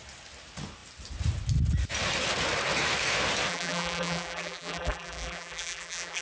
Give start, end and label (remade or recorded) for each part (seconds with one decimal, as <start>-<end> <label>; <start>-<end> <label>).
0.0-3.5 recorded; 3.5-6.2 remade